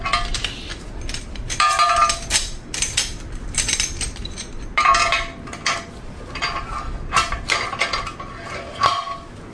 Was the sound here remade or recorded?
recorded